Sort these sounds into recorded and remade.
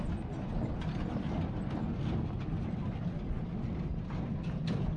recorded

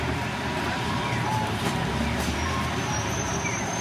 remade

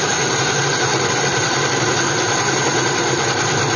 remade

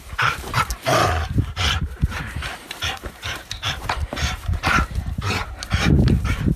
remade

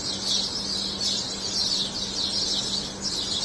recorded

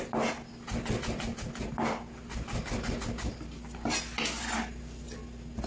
recorded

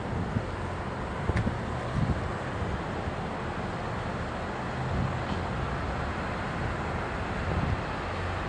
recorded